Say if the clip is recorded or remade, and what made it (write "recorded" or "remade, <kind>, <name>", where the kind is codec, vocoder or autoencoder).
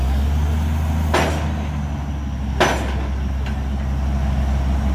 recorded